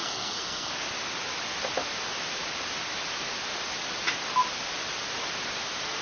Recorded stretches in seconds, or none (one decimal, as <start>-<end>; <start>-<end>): 0.7-6.0